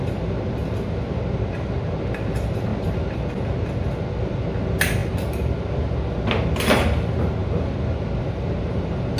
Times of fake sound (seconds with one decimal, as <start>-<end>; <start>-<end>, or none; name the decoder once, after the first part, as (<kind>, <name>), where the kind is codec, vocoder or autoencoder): 2.7-3.2 (vocoder, BigVGAN v2); 7.4-8.2